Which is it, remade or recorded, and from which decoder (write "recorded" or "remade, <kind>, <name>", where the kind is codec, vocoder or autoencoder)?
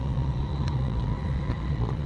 remade, vocoder, Vocos